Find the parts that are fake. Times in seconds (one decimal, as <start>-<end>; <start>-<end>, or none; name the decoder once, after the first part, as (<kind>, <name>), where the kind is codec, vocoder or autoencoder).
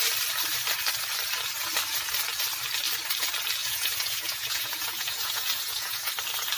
3.6-6.1 (vocoder, Vocos)